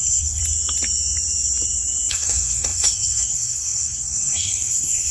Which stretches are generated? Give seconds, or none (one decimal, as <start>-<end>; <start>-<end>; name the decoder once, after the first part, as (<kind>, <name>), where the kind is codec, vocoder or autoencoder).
0.0-0.4 (codec, SNAC); 2.1-5.1